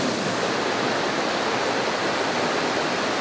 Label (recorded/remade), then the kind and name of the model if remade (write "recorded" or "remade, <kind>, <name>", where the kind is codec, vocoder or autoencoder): recorded